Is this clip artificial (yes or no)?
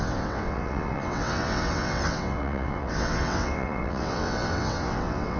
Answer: yes